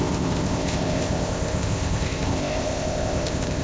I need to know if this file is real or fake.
fake